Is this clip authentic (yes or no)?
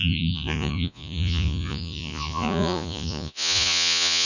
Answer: no